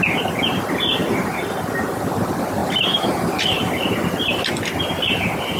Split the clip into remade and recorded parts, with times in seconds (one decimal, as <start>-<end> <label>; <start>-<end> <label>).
0.0-5.6 recorded